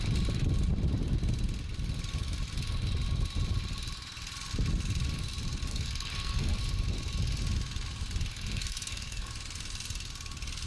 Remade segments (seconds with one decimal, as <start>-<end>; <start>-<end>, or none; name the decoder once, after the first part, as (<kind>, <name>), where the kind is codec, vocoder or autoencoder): 5.7-6.6 (codec, SNAC); 8.3-9.3